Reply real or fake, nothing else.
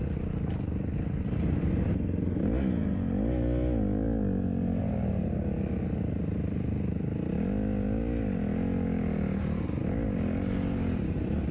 real